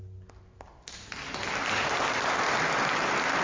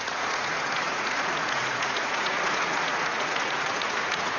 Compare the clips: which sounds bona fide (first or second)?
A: first